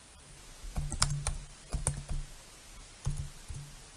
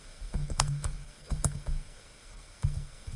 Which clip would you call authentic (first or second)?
first